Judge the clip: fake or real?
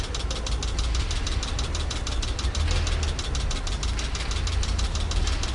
real